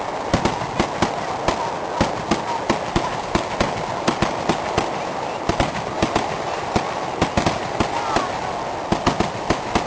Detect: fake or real real